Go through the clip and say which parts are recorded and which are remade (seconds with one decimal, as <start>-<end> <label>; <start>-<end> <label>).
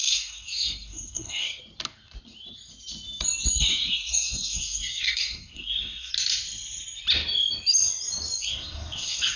0.0-1.6 remade; 1.6-3.6 recorded; 3.6-6.1 remade; 6.1-8.4 recorded; 8.4-9.4 remade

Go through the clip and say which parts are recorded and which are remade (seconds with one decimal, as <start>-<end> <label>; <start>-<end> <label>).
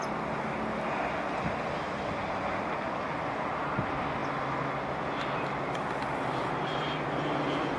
0.0-7.8 recorded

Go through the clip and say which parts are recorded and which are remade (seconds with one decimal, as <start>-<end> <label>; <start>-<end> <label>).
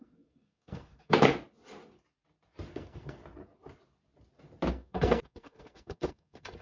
0.0-1.3 remade; 1.3-2.7 recorded; 2.7-3.2 remade; 3.2-4.7 recorded; 4.7-6.6 remade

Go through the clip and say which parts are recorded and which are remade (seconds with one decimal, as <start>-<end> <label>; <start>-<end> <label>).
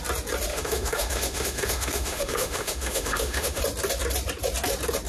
0.0-0.5 recorded; 0.5-3.6 remade; 3.6-5.1 recorded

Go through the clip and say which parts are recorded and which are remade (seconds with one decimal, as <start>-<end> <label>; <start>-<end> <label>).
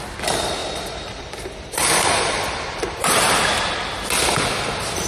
0.0-0.6 recorded; 0.6-3.7 remade; 3.7-5.1 recorded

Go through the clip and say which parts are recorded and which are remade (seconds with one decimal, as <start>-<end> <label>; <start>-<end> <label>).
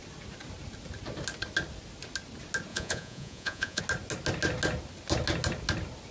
0.0-2.7 recorded; 2.7-3.8 remade; 3.8-6.1 recorded